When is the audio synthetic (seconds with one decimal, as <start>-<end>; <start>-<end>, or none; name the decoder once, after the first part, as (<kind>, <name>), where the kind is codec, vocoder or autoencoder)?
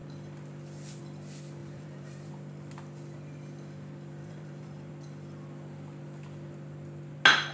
1.6-2.3 (vocoder, BigVGAN v2); 4.2-4.9